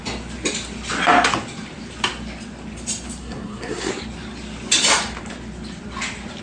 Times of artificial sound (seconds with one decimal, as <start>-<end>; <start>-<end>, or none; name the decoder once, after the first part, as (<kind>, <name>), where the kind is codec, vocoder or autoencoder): 3.2-3.9 (codec, SNAC)